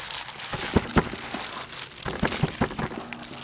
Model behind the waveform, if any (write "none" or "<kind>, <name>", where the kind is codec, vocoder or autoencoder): none